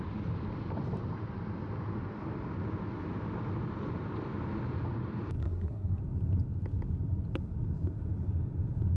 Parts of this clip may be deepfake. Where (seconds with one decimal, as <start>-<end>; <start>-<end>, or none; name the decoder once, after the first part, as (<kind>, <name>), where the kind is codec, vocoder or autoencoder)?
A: 5.4-6.0 (codec, SNAC)